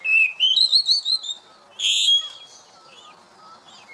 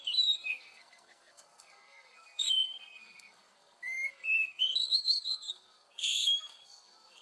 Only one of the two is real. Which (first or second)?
first